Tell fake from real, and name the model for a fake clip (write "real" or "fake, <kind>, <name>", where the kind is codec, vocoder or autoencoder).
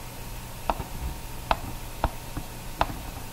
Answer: real